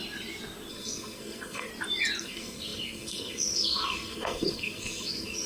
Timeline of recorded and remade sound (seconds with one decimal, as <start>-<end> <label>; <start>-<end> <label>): 0.0-0.7 recorded; 0.7-1.7 remade; 1.7-2.2 recorded; 2.2-5.5 remade

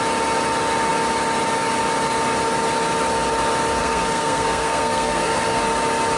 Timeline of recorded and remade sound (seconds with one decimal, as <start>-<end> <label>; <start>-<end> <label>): 0.0-3.8 recorded; 3.8-5.6 remade; 5.6-6.2 recorded

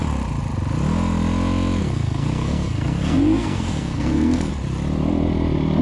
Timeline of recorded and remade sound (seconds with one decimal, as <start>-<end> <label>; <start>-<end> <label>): 0.0-1.8 recorded; 1.8-4.5 remade; 4.5-5.8 recorded

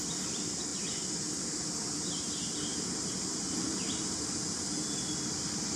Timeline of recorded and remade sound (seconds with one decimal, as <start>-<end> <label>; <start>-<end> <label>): 0.0-5.8 recorded

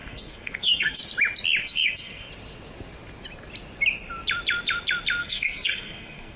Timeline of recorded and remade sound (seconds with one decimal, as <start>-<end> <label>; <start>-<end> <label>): 0.0-1.0 remade; 1.0-1.6 recorded; 1.6-2.3 remade; 2.3-5.2 recorded; 5.2-6.4 remade

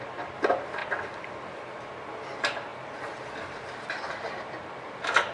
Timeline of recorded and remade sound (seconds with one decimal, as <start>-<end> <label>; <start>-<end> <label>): 0.0-5.3 recorded

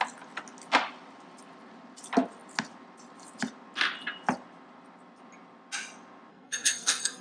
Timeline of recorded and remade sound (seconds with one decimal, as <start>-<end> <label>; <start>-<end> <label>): 0.0-6.3 recorded; 6.3-7.2 remade